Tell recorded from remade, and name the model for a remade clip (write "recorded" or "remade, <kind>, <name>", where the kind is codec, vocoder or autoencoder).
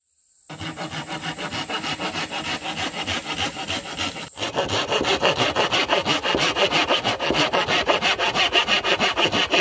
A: recorded